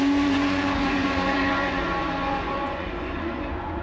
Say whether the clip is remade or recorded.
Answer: remade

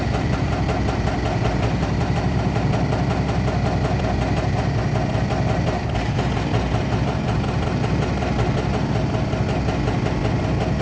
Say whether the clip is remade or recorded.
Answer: recorded